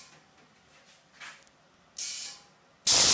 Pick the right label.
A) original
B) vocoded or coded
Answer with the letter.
A